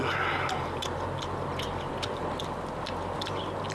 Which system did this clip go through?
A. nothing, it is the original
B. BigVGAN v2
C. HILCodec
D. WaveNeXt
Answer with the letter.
A